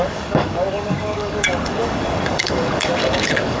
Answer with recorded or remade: remade